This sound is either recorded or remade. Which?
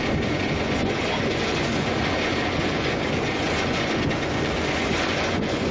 remade